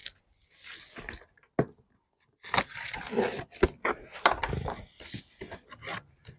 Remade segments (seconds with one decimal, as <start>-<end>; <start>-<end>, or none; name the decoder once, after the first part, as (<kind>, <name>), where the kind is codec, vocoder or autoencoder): none